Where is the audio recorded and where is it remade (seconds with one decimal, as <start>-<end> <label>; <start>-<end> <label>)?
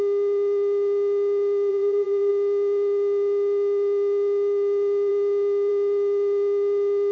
0.0-1.7 recorded; 1.7-2.3 remade; 2.3-7.1 recorded